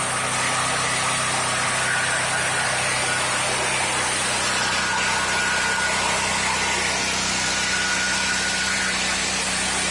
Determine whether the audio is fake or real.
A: real